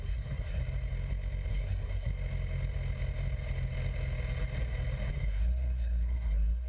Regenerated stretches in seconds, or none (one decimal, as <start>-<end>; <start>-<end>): 0.0-0.6; 1.5-2.1; 5.1-6.7

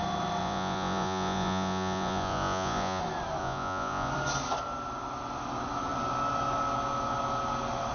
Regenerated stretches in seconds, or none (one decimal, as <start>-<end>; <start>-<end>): 0.4-3.0; 3.4-4.1